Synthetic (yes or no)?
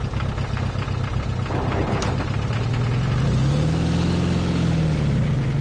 no